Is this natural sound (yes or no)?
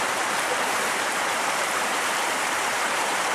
no